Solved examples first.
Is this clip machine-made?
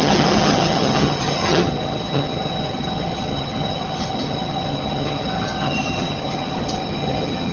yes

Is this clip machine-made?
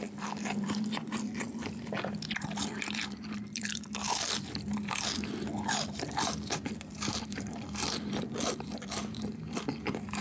yes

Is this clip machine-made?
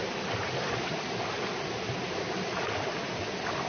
yes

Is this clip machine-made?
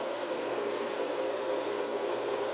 yes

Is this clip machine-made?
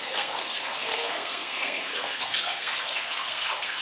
yes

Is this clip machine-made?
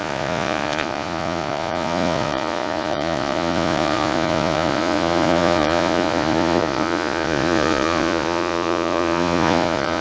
yes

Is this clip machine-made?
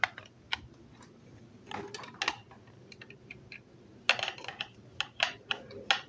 no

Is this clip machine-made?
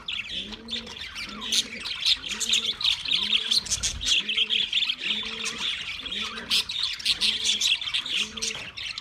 no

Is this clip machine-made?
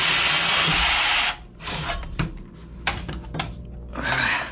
no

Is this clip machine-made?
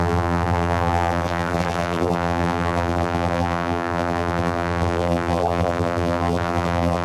yes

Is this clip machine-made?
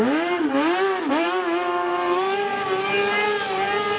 no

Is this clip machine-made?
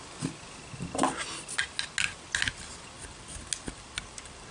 no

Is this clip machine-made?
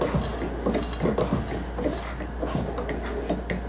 no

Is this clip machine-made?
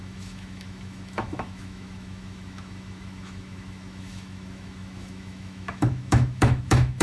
yes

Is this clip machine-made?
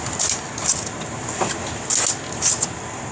no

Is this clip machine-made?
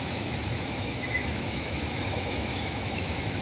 yes